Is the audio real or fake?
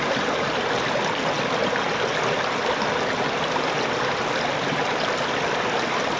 real